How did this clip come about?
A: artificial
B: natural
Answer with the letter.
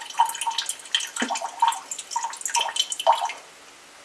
B